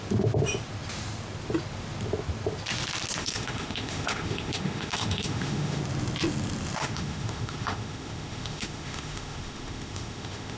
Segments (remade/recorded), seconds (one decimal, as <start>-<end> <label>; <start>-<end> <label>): 0.0-3.2 recorded; 3.2-5.8 remade; 5.8-6.8 recorded; 6.8-10.6 remade